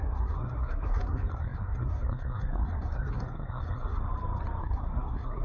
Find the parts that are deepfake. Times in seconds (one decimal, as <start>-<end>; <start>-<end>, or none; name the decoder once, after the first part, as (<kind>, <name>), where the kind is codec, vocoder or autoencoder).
0.0-4.0 (codec, SNAC); 4.6-5.4